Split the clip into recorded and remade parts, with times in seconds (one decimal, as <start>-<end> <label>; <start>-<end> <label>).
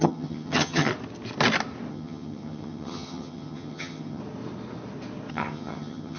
0.0-0.9 remade; 0.9-1.9 recorded; 1.9-4.2 remade; 4.2-5.3 recorded; 5.3-6.2 remade